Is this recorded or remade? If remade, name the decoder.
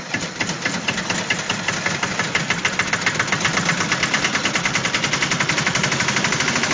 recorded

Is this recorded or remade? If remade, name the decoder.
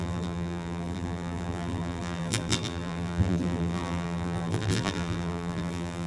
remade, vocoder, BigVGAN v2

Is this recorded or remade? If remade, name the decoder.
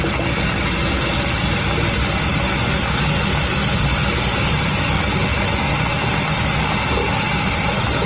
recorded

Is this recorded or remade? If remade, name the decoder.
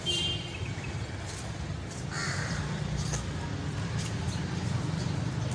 recorded